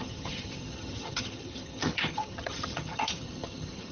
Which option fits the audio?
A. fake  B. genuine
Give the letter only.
A